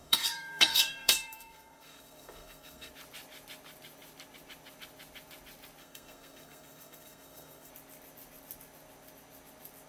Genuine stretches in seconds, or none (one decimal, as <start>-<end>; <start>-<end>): 2.9-5.8; 7.7-9.9